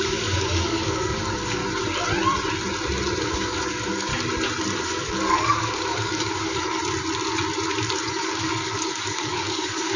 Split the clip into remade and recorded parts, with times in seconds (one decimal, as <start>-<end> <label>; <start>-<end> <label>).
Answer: 0.0-1.6 remade; 1.6-3.2 recorded; 3.2-4.1 remade; 4.1-4.8 recorded; 4.8-6.8 remade; 6.8-8.1 recorded; 8.1-10.0 remade